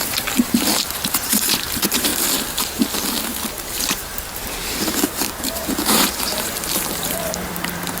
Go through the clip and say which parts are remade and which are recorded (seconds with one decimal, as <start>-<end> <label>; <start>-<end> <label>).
0.0-2.1 remade; 2.1-3.8 recorded; 3.8-8.0 remade